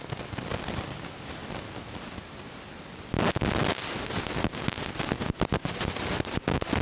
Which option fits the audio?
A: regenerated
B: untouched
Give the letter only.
B